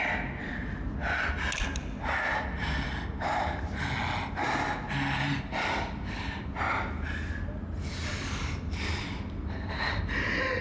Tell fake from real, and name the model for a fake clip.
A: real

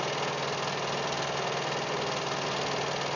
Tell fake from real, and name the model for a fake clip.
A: real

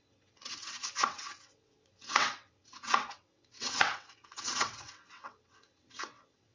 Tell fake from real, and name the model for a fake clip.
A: fake, vocoder, WaveNeXt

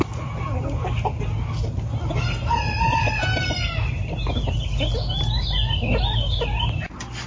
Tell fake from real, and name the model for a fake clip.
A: real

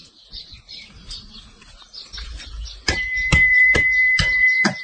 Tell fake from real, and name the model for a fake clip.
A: fake, vocoder, BigVGAN v2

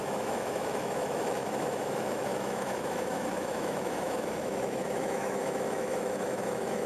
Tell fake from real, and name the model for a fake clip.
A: fake, autoencoder, DAC-VAE